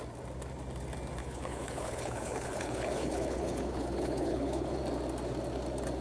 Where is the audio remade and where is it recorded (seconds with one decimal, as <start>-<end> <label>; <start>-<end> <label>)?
0.0-1.2 recorded; 1.2-4.8 remade; 4.8-6.0 recorded

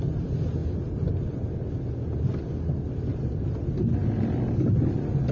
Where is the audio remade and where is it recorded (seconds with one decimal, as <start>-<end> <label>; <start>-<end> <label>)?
0.0-5.3 recorded

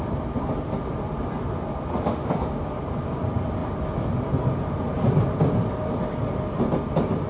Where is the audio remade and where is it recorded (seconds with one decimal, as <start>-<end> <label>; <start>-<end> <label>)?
0.0-1.9 recorded; 1.9-2.4 remade; 2.4-7.3 recorded

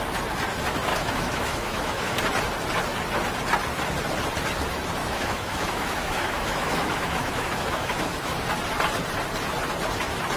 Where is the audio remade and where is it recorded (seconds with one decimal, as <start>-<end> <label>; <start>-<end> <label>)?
0.0-0.9 recorded; 0.9-2.2 remade; 2.2-5.0 recorded; 5.0-8.5 remade; 8.5-10.4 recorded